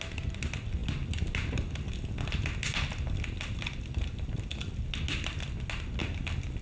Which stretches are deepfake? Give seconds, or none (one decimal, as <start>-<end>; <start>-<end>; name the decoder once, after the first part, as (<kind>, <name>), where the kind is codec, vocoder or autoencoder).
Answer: none